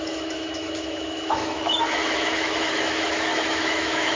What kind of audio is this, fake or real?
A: fake